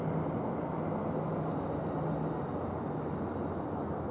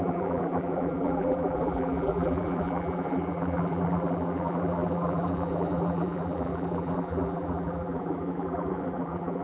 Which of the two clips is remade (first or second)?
second